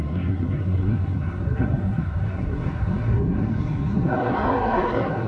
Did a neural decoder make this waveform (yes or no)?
yes